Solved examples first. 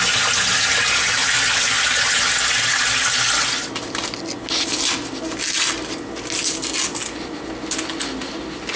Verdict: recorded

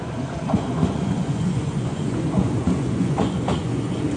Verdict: remade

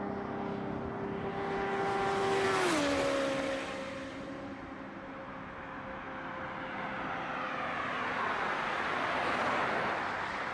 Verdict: recorded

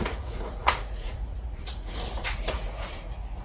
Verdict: remade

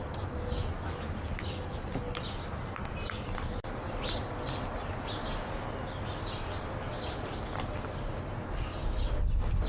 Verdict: recorded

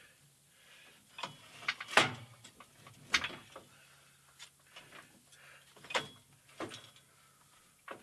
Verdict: recorded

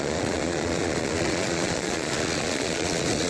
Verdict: remade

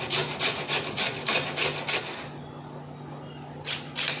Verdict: recorded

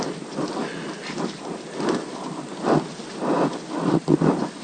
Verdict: recorded